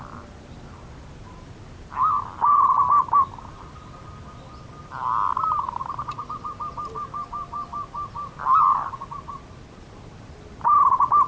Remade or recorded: recorded